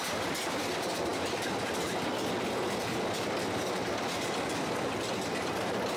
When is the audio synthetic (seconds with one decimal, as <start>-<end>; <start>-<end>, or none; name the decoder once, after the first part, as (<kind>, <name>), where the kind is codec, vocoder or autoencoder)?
none